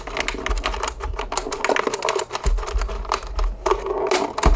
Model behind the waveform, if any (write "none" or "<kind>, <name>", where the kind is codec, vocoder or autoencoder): none